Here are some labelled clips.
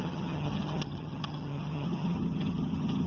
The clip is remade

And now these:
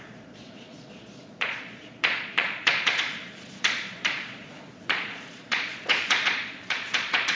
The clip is remade